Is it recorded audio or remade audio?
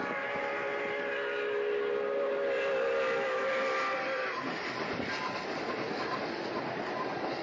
recorded